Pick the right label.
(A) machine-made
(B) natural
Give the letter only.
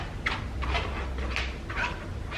B